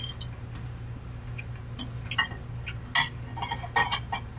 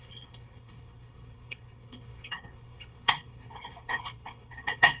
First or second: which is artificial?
second